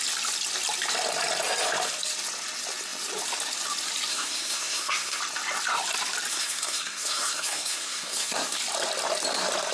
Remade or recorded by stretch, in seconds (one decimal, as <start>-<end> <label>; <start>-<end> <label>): 0.0-4.1 recorded; 4.1-5.2 remade; 5.2-6.3 recorded; 6.3-8.6 remade; 8.6-9.7 recorded